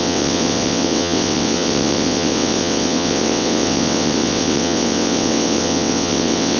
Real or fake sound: fake